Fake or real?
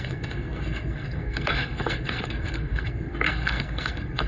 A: fake